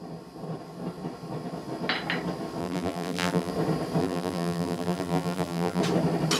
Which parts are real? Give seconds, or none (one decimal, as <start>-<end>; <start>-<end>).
0.0-2.6; 3.5-4.0; 5.8-6.4